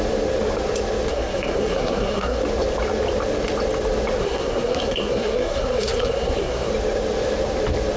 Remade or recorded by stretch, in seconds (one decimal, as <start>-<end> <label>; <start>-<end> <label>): 0.0-1.1 recorded; 1.1-2.4 remade; 2.4-4.2 recorded; 4.2-6.7 remade; 6.7-8.0 recorded